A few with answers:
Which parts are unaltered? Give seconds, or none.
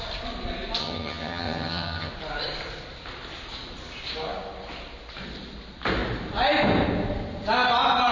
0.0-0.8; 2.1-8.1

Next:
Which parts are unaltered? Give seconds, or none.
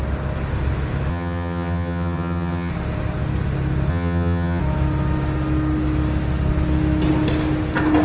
0.0-1.1; 2.7-3.9; 4.6-8.0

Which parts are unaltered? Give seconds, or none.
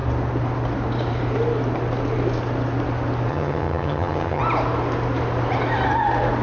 0.0-3.3; 4.4-6.4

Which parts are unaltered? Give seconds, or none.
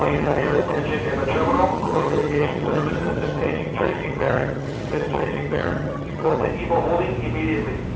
0.8-1.7; 6.5-8.0